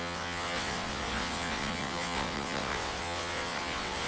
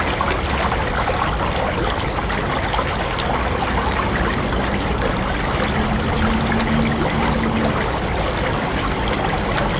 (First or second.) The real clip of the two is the second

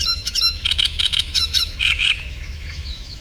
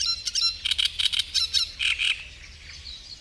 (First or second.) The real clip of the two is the second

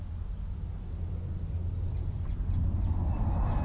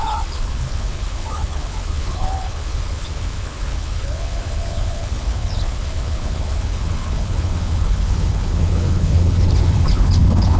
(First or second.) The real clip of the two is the first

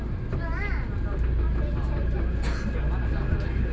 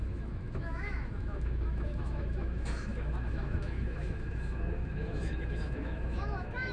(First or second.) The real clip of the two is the first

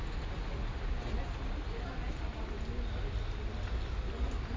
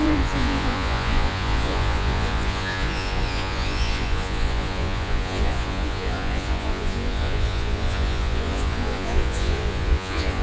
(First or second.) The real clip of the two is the first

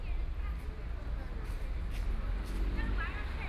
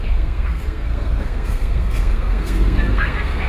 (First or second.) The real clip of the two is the first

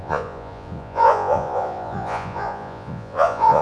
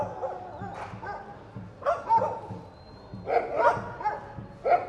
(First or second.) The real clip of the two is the second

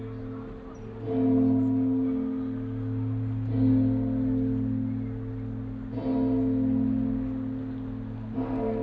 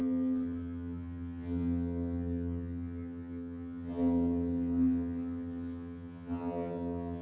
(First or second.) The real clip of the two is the first